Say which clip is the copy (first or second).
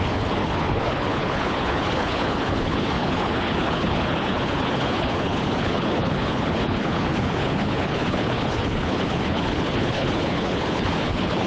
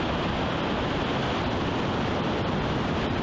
first